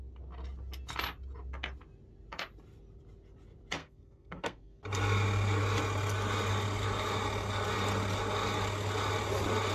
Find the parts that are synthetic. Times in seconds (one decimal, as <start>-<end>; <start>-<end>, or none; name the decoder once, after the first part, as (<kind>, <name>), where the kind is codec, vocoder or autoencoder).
3.8-4.8 (codec, SNAC)